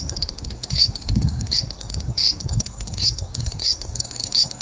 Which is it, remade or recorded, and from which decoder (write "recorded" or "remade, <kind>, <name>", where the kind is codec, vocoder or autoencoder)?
remade, codec, SNAC